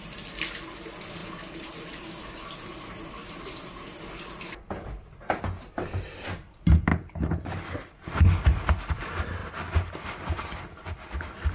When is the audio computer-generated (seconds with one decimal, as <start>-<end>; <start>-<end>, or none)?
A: none